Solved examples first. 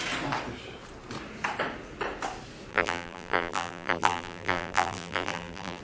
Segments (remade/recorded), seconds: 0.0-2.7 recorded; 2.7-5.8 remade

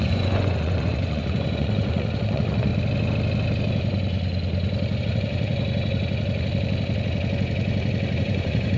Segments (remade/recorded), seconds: 0.0-2.7 remade; 2.7-5.0 recorded; 5.0-5.5 remade; 5.5-8.2 recorded; 8.2-8.8 remade

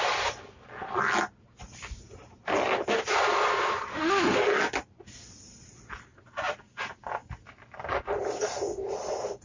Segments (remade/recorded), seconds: 0.0-3.9 recorded; 3.9-4.4 remade; 4.4-9.4 recorded

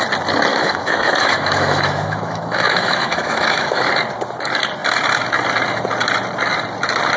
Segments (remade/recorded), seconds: 0.0-0.5 recorded; 0.5-3.9 remade; 3.9-7.2 recorded

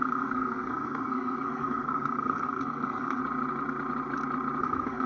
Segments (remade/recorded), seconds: 0.0-3.2 remade; 3.2-4.6 recorded; 4.6-5.1 remade

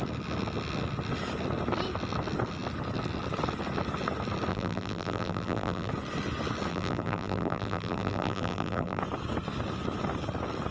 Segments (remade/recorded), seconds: 0.0-4.5 recorded; 4.5-5.9 remade; 5.9-6.7 recorded; 6.7-9.0 remade; 9.0-10.7 recorded